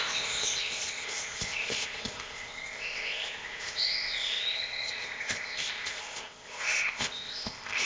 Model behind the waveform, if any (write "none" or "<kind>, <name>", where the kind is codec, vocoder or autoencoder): codec, ZipCodec